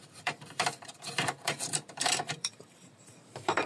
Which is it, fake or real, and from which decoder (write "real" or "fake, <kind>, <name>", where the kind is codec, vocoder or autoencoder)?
fake, vocoder, BigVGAN v2